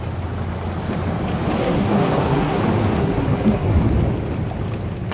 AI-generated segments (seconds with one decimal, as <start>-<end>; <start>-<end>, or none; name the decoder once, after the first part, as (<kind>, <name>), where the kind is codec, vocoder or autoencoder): 1.6-2.6 (codec, SNAC); 3.0-3.9